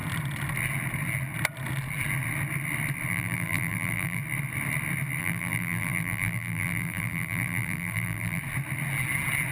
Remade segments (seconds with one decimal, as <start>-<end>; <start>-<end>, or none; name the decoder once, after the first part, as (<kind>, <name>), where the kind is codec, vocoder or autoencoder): 3.1-4.2 (vocoder, BigVGAN v2); 5.2-8.4